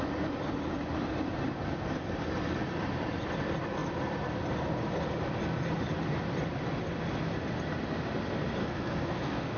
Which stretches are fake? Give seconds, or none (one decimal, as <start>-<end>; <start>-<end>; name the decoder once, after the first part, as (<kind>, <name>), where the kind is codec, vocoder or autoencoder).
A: 8.6-9.6 (codec, SNAC)